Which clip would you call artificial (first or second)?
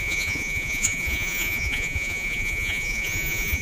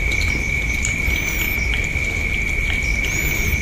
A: first